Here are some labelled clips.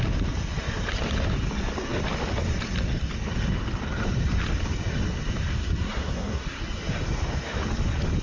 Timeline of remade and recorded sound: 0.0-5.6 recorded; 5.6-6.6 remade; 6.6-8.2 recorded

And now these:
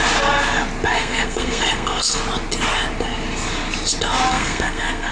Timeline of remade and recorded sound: 0.0-0.9 recorded; 0.9-2.2 remade; 2.2-4.3 recorded; 4.3-5.1 remade

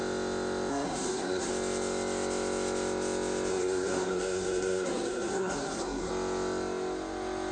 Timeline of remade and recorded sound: 0.0-0.7 recorded; 0.7-1.5 remade; 1.5-3.5 recorded; 3.5-6.1 remade; 6.1-7.5 recorded